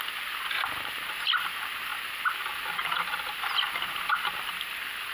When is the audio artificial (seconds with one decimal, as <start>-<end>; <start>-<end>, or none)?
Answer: none